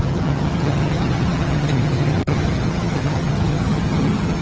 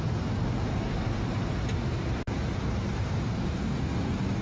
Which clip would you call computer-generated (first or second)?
first